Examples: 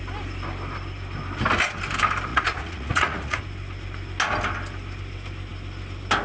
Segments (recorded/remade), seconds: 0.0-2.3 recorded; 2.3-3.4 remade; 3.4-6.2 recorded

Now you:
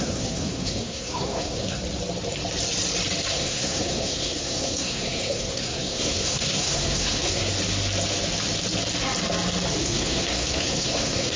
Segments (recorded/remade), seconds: 0.0-1.8 remade; 1.8-3.3 recorded; 3.3-7.5 remade; 7.5-9.8 recorded; 9.8-11.4 remade

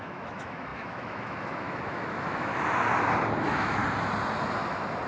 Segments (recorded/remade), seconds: 0.0-2.5 remade; 2.5-3.4 recorded; 3.4-3.8 remade; 3.8-5.1 recorded

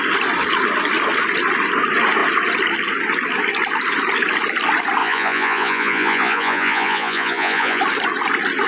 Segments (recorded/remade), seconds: 0.0-5.0 recorded; 5.0-7.8 remade; 7.8-8.7 recorded

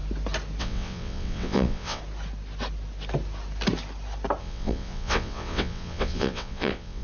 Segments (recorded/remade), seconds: 0.0-0.6 recorded; 0.6-2.0 remade; 2.0-4.4 recorded; 4.4-7.0 remade

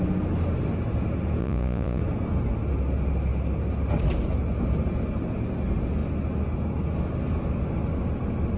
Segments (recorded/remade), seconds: 0.0-1.4 recorded; 1.4-2.0 remade; 2.0-8.6 recorded

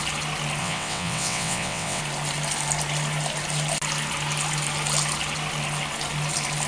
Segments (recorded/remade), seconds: 0.0-0.6 recorded; 0.6-2.0 remade; 2.0-6.7 recorded